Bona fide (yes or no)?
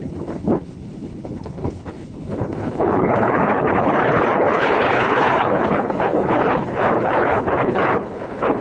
no